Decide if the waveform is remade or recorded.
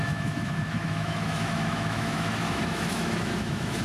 remade